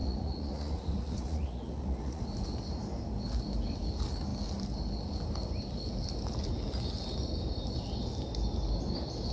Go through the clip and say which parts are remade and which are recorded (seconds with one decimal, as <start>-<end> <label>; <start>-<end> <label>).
0.0-2.2 remade; 2.2-9.3 recorded